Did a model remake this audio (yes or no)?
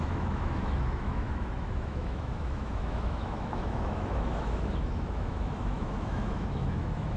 yes